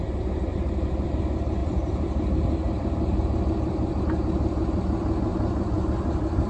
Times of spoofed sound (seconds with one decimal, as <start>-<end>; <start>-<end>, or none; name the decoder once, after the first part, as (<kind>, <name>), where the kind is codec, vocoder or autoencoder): 0.5-1.1 (vocoder, BigVGAN v2); 1.6-4.0; 5.3-6.5